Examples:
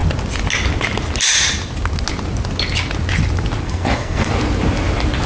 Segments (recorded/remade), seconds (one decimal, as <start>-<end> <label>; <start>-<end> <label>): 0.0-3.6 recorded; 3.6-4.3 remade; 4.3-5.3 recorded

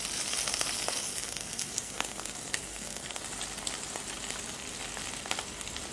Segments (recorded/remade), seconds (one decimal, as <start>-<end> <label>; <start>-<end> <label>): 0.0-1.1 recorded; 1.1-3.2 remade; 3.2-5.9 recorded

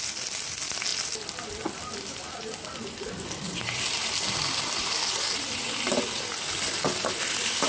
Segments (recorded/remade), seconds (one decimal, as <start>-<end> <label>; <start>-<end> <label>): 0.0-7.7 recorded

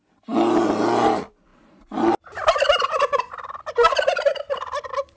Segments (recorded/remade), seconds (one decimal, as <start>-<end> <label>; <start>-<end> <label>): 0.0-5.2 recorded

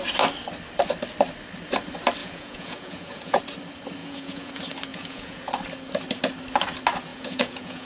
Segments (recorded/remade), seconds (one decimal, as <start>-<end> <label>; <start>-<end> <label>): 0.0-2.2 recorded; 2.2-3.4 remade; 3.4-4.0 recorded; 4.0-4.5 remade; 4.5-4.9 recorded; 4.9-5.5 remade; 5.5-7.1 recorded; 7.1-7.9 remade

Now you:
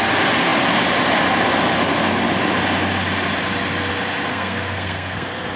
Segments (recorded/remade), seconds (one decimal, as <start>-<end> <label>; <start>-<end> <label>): 0.0-4.3 recorded; 4.3-5.6 remade

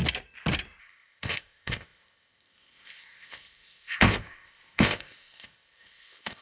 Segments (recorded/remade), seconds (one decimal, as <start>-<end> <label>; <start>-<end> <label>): 0.0-0.8 recorded; 0.8-6.4 remade